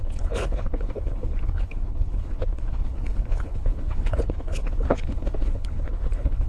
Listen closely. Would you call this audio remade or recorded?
remade